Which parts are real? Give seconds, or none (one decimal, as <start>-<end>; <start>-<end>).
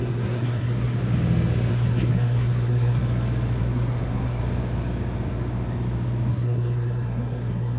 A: 1.0-1.7; 3.0-3.6; 4.4-6.3